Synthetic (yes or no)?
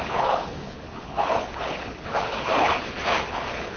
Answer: yes